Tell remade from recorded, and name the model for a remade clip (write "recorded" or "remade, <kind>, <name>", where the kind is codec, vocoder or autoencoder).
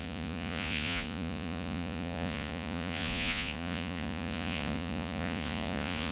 remade, vocoder, Vocos